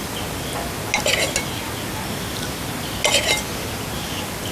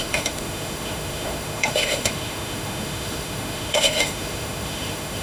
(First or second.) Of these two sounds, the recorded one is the first